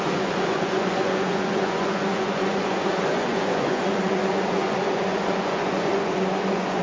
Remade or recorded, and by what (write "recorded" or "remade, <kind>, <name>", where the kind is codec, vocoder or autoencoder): remade, vocoder, Vocos